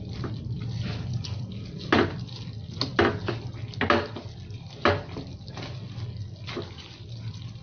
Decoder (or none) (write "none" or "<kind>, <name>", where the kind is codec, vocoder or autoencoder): none